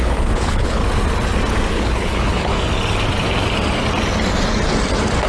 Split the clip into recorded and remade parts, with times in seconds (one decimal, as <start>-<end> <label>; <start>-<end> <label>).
0.0-0.8 remade; 0.8-1.7 recorded; 1.7-2.5 remade; 2.5-5.3 recorded